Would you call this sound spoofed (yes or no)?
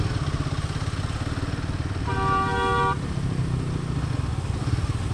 no